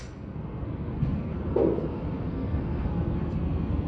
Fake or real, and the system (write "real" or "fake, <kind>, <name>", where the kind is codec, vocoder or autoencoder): fake, codec, SNAC